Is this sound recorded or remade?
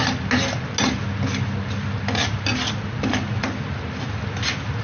recorded